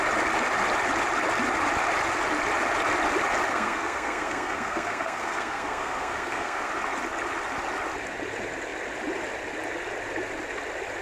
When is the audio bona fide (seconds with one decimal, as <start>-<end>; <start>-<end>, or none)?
0.0-3.5; 6.7-11.0

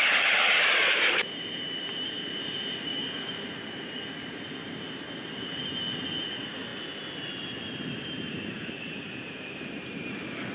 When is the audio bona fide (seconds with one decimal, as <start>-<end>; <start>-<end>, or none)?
5.7-6.3; 6.7-7.5